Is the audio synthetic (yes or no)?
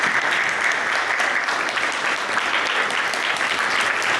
no